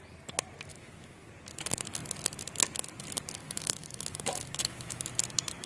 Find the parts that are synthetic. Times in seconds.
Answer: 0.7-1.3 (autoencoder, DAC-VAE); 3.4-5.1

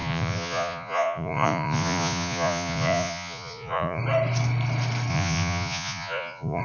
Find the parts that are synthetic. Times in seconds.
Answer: 0.0-4.0 (vocoder, Vocos); 5.1-6.6